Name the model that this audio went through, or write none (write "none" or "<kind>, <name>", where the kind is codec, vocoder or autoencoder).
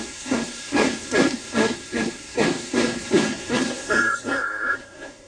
codec, SNAC